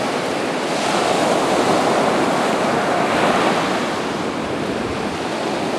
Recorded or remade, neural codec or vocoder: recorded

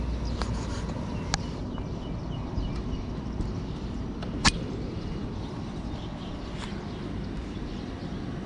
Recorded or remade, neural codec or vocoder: recorded